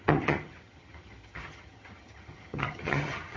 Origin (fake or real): fake